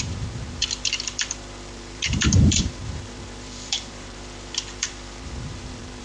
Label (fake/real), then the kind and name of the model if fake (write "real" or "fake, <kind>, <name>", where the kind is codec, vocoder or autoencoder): fake, vocoder, BigVGAN v2